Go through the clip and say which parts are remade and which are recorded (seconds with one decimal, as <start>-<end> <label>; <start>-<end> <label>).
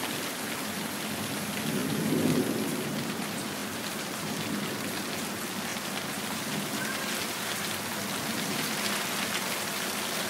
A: 0.0-10.3 recorded